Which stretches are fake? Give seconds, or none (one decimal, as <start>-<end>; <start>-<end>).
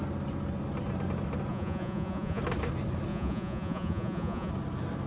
1.5-2.4; 3.1-4.5